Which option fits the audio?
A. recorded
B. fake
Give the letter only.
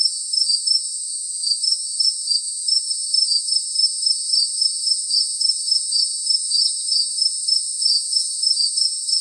B